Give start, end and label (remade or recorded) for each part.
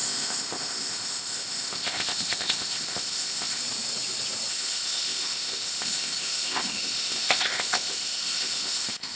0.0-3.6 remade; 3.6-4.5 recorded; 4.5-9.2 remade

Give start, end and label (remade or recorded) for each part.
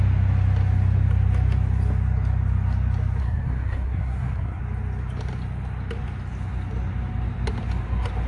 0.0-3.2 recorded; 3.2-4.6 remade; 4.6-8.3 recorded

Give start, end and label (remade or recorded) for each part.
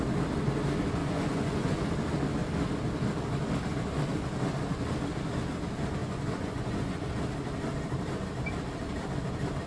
0.0-1.0 recorded; 1.0-1.9 remade; 1.9-6.0 recorded; 6.0-7.1 remade; 7.1-9.7 recorded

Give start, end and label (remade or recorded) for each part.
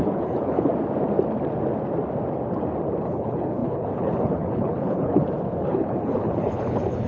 0.0-0.7 remade; 0.7-3.0 recorded; 3.0-7.1 remade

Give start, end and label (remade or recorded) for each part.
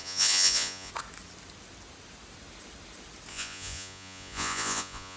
0.0-0.9 remade; 0.9-3.3 recorded; 3.3-5.2 remade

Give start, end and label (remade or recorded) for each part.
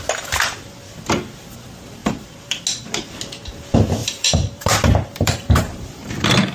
0.0-2.0 recorded; 2.0-2.6 remade; 2.6-4.0 recorded; 4.0-6.1 remade; 6.1-6.5 recorded